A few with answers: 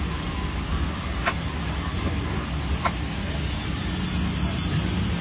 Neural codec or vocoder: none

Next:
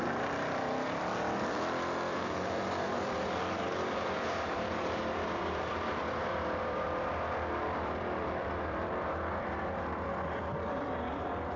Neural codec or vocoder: vocoder, BigVGAN v2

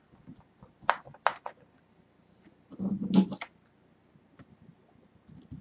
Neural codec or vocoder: none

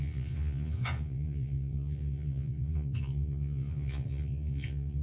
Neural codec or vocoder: vocoder, Vocos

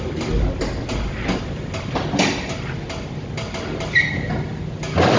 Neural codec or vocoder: none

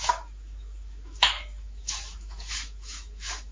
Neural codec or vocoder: autoencoder, DAC-VAE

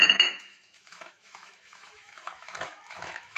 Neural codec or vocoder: autoencoder, DAC-VAE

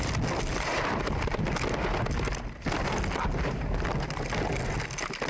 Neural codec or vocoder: none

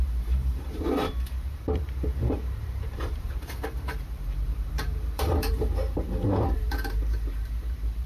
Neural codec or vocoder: vocoder, BigVGAN v2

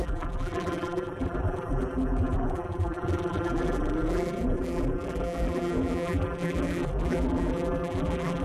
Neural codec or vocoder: vocoder, BigVGAN v2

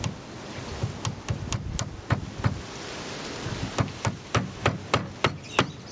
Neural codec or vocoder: none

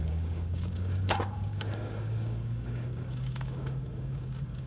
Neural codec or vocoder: codec, DAC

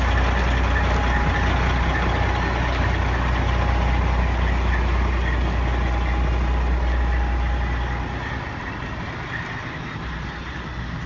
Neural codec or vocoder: none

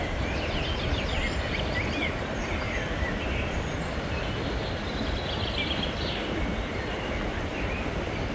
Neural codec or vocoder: none